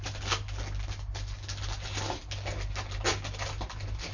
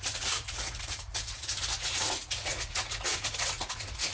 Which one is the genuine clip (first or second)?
first